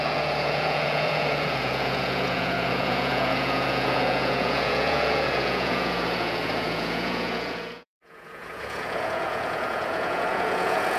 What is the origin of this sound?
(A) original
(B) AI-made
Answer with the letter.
B